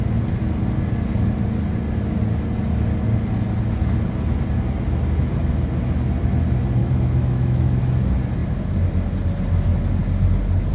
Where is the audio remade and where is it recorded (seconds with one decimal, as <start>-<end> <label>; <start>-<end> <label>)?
0.0-6.8 recorded; 6.8-7.8 remade; 7.8-10.7 recorded